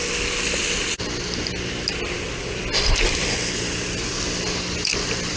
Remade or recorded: recorded